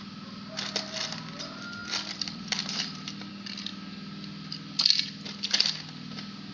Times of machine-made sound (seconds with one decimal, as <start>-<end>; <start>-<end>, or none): 1.8-3.3